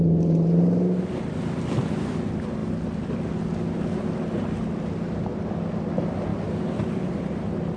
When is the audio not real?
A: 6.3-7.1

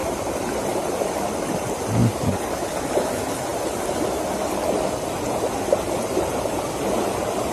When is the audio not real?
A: none

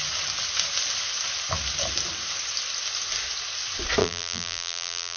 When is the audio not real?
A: 4.0-5.2

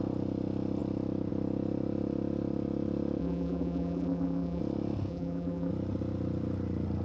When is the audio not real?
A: 3.2-4.6; 5.1-5.7

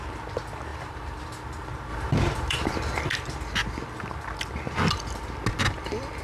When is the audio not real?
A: 0.7-1.2; 1.9-3.1